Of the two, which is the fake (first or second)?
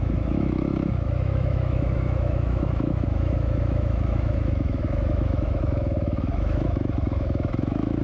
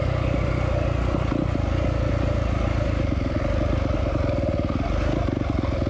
first